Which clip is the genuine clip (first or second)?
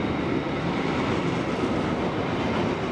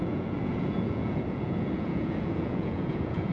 first